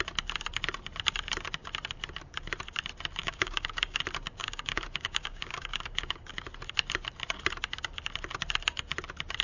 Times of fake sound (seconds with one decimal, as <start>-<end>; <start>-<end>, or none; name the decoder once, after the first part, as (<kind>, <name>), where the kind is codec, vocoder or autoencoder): 3.2-4.0 (codec, DAC); 4.4-6.3